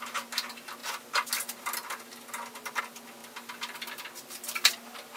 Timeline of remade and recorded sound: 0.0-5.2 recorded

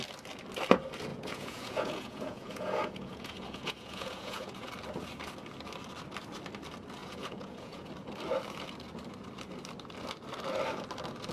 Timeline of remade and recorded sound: 0.0-1.1 recorded; 1.1-4.7 remade; 4.7-7.0 recorded; 7.0-7.9 remade; 7.9-11.3 recorded